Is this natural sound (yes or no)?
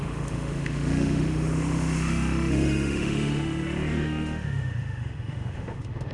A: no